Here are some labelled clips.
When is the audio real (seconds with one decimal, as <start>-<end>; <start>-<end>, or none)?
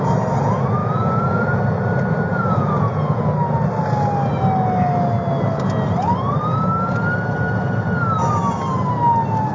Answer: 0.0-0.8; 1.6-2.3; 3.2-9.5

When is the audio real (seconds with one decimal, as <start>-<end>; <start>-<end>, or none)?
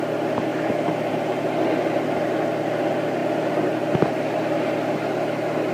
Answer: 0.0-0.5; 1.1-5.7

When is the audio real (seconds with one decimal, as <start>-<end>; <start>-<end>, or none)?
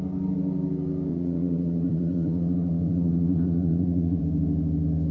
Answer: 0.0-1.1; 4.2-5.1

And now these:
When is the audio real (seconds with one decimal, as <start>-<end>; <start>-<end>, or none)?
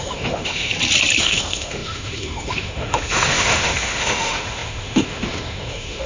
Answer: 0.7-1.2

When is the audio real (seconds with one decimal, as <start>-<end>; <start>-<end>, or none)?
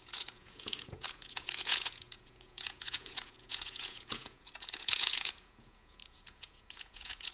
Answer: none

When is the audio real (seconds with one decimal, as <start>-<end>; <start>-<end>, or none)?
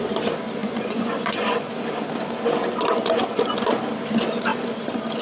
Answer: 0.0-0.6; 1.7-5.2